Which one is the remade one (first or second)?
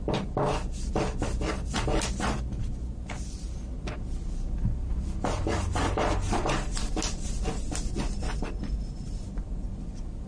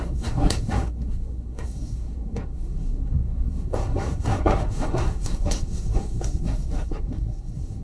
second